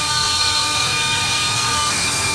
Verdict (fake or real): fake